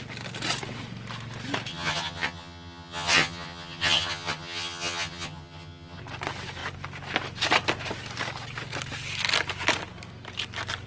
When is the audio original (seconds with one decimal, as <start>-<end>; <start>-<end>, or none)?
0.0-1.7; 6.0-10.9